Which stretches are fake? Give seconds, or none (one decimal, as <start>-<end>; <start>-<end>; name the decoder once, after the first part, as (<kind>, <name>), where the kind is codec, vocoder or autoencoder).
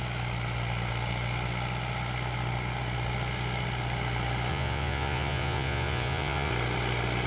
4.5-6.5 (vocoder, Vocos)